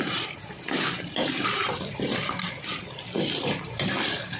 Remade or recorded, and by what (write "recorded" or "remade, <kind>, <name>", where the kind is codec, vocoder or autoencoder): remade, vocoder, BigVGAN v2